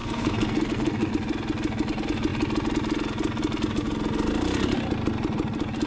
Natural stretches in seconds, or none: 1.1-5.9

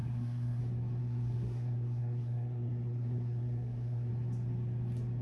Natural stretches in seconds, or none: 0.6-1.0; 4.1-5.2